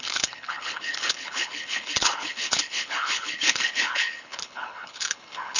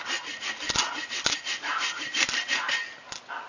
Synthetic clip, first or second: first